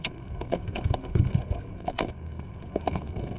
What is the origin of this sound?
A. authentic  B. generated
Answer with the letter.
B